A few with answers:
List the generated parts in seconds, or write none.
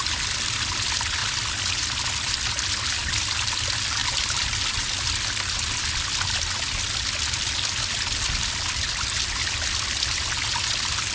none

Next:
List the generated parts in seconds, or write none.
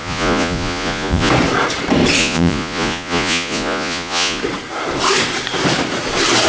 0.0-1.3 (vocoder, Vocos); 2.2-4.4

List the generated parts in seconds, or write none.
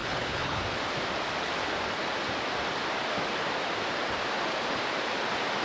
0.0-0.6 (codec, HILCodec)